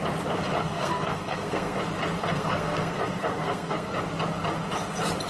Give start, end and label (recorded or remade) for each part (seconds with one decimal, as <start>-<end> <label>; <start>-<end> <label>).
0.0-0.6 recorded; 0.6-1.8 remade; 1.8-2.2 recorded; 2.2-3.9 remade; 3.9-5.3 recorded